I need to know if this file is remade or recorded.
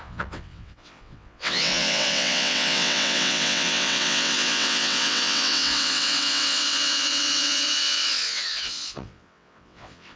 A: remade